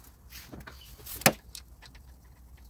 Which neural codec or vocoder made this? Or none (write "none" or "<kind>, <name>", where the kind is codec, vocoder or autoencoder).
none